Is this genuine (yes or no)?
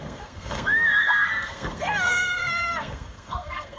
no